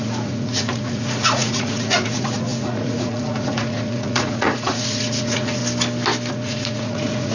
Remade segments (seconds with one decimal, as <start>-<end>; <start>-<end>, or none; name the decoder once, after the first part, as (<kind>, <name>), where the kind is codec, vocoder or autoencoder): 0.0-5.6 (vocoder, Vocos); 6.3-7.3